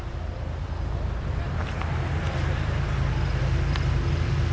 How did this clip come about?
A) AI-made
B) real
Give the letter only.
B